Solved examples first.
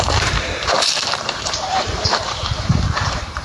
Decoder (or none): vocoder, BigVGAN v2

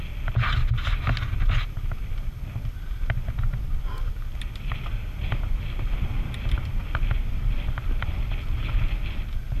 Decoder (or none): none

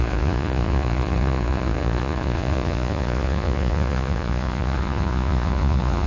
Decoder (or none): vocoder, Vocos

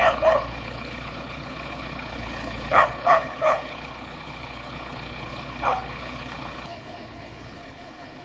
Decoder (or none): codec, HILCodec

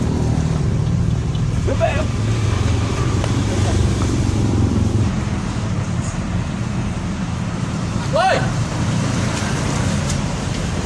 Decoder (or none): vocoder, BigVGAN v2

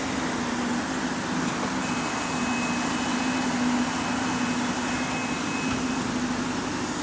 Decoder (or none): none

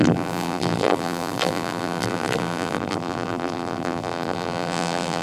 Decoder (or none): vocoder, BigVGAN v2